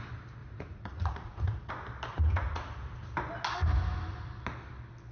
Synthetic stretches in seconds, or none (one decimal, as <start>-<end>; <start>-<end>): 0.4-1.7; 2.1-2.9